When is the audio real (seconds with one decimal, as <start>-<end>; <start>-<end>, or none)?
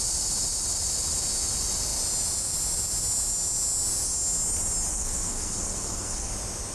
0.0-4.9; 6.3-6.7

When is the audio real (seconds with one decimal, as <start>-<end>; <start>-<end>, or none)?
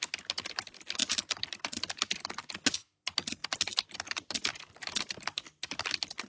0.0-6.3